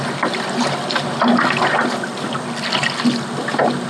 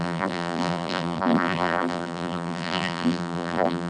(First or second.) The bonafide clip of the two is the first